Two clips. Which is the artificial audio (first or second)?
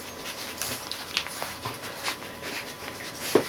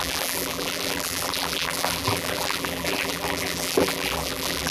second